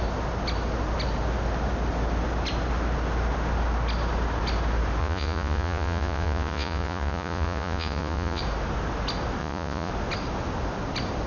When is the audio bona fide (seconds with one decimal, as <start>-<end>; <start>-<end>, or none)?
0.0-5.0; 8.4-9.4; 9.9-11.3

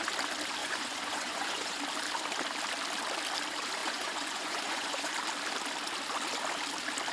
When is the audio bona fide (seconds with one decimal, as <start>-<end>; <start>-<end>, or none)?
0.0-0.6; 1.8-3.8; 5.1-7.1

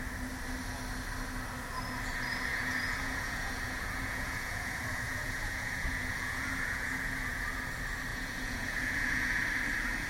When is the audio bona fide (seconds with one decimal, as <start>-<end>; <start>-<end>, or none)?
0.0-2.5; 7.6-8.1; 9.4-10.1